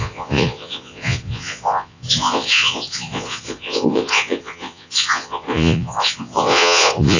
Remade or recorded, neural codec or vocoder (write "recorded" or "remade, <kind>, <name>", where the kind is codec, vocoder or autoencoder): remade, vocoder, Vocos